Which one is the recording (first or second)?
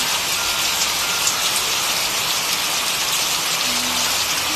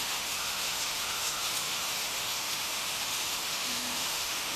first